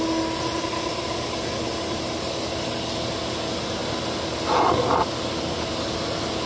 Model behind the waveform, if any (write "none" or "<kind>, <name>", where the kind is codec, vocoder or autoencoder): none